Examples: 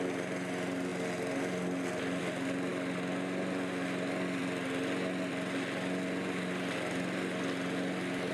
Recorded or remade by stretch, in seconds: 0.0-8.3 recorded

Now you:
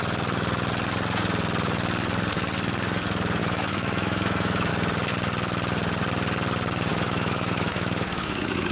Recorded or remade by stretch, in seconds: 0.0-3.4 recorded; 3.4-4.7 remade; 4.7-6.9 recorded; 6.9-8.7 remade

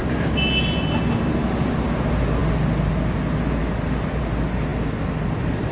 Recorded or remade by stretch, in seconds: 0.0-5.7 recorded

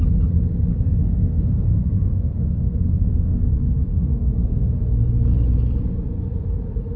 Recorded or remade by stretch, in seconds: 0.0-1.0 recorded; 1.0-3.5 remade; 3.5-3.9 recorded; 3.9-4.7 remade; 4.7-7.0 recorded

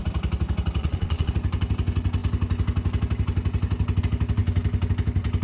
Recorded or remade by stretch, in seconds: 0.0-0.8 recorded; 0.8-1.3 remade; 1.3-5.4 recorded

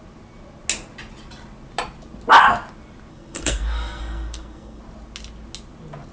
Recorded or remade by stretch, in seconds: 0.0-3.1 recorded; 3.1-4.8 remade; 4.8-6.1 recorded

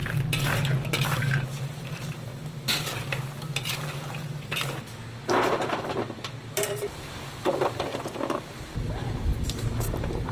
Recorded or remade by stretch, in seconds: 0.0-1.6 recorded; 1.6-2.3 remade; 2.3-3.7 recorded; 3.7-4.2 remade; 4.2-5.0 recorded; 5.0-7.9 remade; 7.9-8.4 recorded; 8.4-10.3 remade

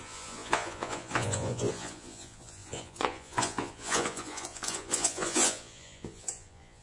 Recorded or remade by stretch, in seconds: 0.0-6.8 remade